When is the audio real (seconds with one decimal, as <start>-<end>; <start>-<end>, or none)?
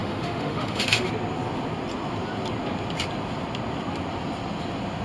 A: 1.1-5.0